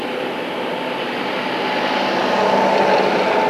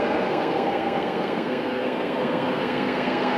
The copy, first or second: second